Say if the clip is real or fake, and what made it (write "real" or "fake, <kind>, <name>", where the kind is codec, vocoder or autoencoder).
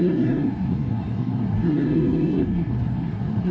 fake, codec, SNAC